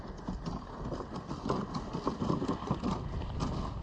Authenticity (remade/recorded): recorded